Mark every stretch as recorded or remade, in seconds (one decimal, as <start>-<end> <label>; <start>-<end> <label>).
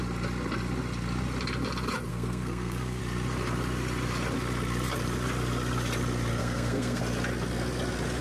0.0-2.1 recorded; 2.1-3.0 remade; 3.0-6.4 recorded; 6.4-7.0 remade; 7.0-8.2 recorded